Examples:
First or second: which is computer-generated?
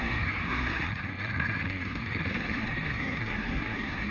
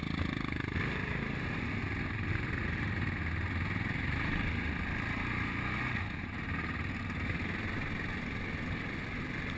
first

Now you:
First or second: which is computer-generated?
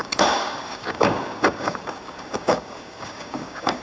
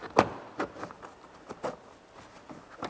first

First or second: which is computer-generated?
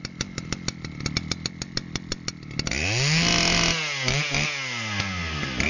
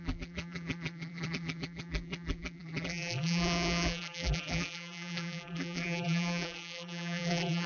second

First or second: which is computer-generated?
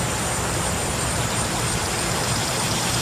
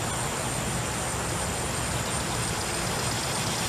first